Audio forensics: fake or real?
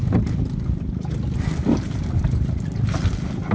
real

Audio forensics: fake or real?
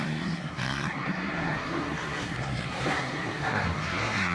fake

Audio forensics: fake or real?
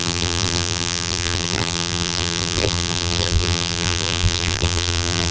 fake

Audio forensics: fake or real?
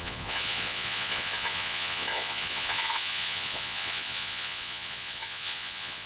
fake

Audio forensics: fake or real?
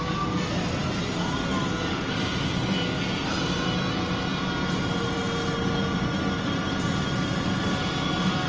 real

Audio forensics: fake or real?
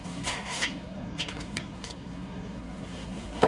fake